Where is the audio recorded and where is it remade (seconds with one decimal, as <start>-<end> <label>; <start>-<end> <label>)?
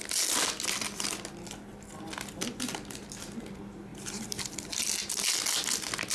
0.0-6.1 recorded